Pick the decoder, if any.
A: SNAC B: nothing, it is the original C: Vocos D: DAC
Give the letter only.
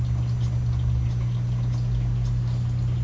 B